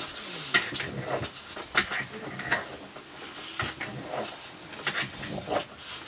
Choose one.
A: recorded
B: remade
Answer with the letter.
A